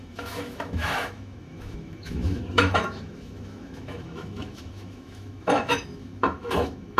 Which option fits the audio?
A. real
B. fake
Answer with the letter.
B